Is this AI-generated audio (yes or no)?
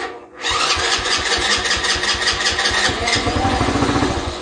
yes